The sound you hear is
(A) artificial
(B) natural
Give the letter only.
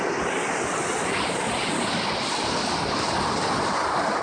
B